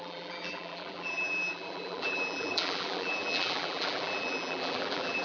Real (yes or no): no